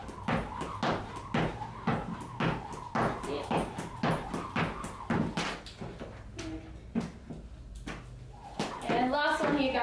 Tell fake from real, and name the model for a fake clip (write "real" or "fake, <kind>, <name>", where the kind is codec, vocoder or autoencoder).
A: real